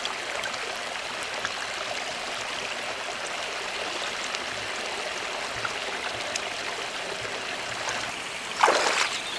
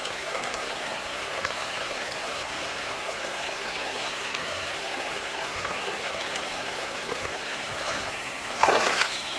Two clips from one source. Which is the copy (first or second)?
second